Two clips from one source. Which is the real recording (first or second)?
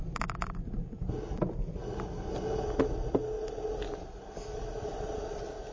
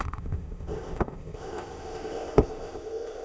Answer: first